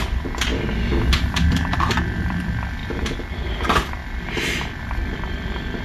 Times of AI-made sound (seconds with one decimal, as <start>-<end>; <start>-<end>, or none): 0.0-0.5; 1.5-2.8; 3.3-5.8